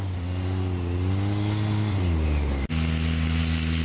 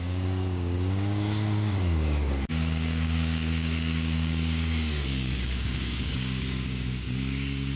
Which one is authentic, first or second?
first